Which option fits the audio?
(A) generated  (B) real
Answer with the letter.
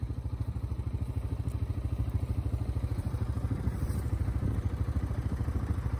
A